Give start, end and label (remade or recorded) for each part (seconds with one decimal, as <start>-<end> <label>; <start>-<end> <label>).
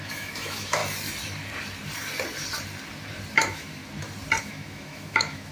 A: 0.0-0.8 remade; 0.8-3.3 recorded; 3.3-3.8 remade; 3.8-4.4 recorded; 4.4-5.5 remade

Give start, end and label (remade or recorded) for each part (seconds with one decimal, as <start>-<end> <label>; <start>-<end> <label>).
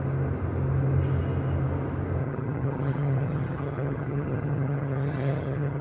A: 0.0-2.2 recorded; 2.2-5.8 remade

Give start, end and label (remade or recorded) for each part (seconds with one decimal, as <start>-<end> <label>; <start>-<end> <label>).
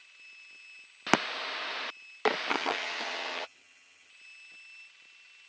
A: 0.0-2.5 recorded; 2.5-4.1 remade; 4.1-5.5 recorded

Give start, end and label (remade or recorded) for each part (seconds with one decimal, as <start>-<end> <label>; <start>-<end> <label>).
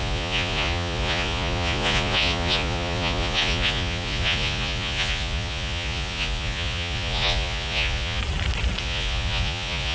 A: 0.0-8.2 remade; 8.2-8.8 recorded; 8.8-9.9 remade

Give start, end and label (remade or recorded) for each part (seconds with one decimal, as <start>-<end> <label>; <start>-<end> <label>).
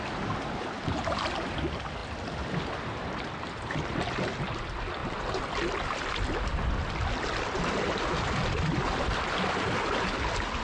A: 0.0-10.6 recorded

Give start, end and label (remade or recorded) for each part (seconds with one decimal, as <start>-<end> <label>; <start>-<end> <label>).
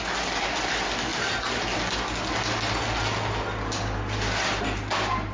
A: 0.0-5.3 recorded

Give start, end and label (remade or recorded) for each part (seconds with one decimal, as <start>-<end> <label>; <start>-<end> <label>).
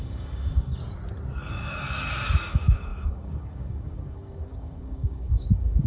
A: 0.0-0.8 remade; 0.8-1.5 recorded; 1.5-5.9 remade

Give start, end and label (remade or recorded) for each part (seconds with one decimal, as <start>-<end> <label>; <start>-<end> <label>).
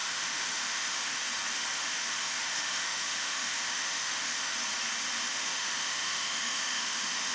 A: 0.0-1.2 remade; 1.2-1.7 recorded; 1.7-4.5 remade; 4.5-5.3 recorded; 5.3-7.3 remade